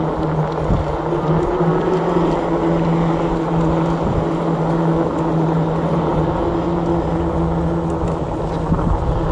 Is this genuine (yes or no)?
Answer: yes